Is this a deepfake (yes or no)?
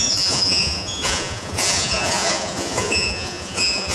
yes